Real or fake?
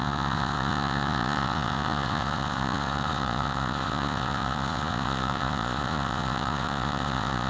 fake